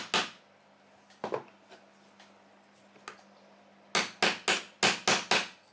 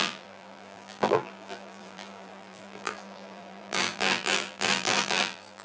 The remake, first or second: second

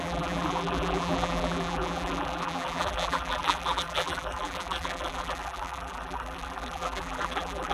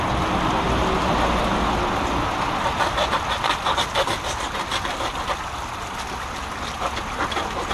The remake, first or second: first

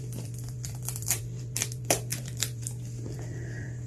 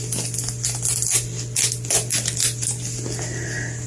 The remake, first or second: first